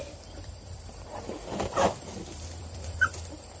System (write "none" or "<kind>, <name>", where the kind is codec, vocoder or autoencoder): vocoder, BigVGAN v2